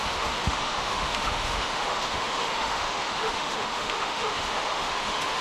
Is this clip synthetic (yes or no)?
yes